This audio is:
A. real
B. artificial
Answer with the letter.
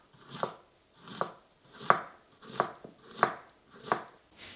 A